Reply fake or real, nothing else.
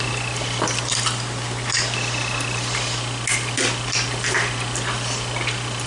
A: real